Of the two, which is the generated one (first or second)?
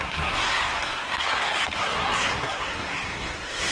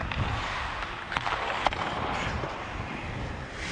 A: first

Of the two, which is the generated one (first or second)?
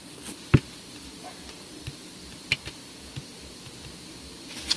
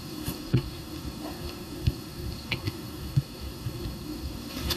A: second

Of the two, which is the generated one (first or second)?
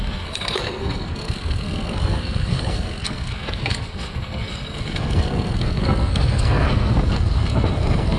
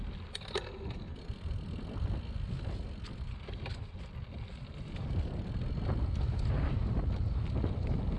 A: first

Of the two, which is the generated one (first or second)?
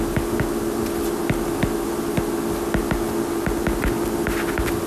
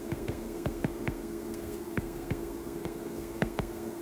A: second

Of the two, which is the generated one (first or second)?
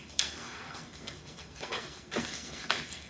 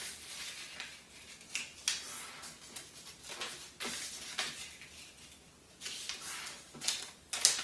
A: first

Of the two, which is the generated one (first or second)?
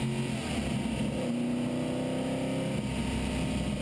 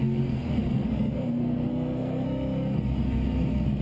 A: second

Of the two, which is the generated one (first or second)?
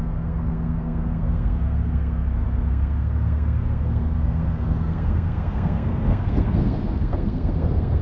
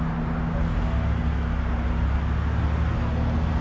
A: first